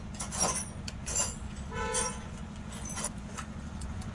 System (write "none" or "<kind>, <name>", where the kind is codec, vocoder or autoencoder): vocoder, Vocos